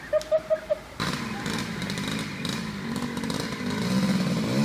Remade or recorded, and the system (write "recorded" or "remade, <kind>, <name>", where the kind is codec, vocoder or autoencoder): recorded